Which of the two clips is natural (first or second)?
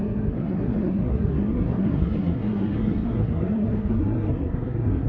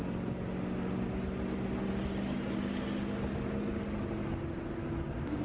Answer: second